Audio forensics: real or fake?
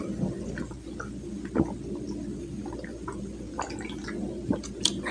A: real